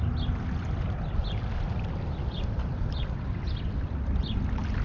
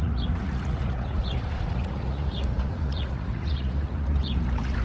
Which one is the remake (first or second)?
second